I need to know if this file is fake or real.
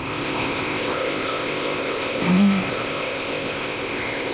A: fake